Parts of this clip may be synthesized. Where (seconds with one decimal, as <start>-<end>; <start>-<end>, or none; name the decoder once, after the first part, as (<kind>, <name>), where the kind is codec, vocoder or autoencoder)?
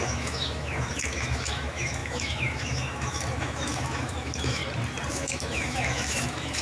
0.0-4.6 (autoencoder, DAC-VAE); 5.1-6.6